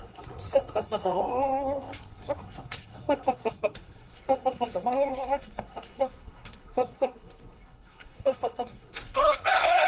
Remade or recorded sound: remade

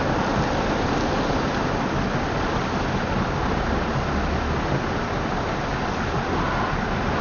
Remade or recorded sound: remade